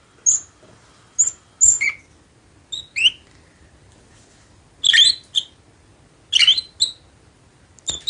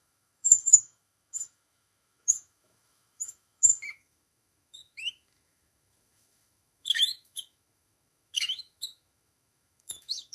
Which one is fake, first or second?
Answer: second